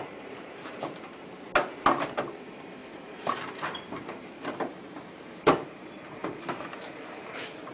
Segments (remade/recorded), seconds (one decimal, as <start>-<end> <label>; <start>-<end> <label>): 0.0-1.5 remade; 1.5-2.2 recorded; 2.2-7.7 remade